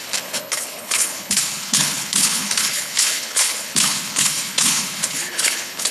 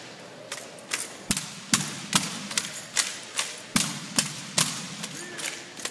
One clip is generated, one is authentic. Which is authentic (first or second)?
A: second